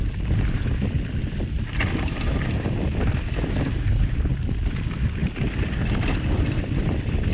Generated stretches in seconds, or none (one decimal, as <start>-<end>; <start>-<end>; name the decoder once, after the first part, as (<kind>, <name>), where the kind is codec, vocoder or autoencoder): none